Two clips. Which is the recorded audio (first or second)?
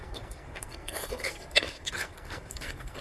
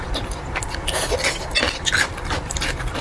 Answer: second